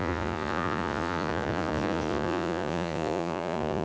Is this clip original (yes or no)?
no